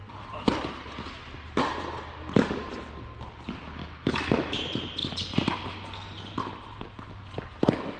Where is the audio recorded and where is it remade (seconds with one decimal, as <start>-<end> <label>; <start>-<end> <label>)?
0.0-3.8 recorded; 3.8-4.6 remade; 4.6-8.0 recorded